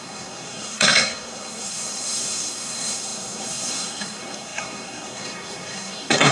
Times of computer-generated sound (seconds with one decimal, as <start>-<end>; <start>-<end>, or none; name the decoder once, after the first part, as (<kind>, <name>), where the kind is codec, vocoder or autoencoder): 0.0-6.3 (codec, SNAC)